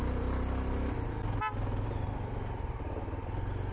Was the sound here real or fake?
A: real